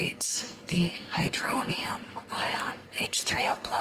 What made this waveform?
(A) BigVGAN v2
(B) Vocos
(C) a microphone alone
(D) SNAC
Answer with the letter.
D